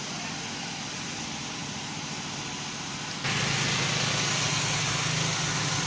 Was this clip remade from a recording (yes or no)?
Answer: no